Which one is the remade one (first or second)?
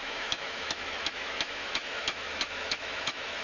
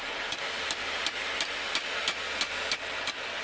first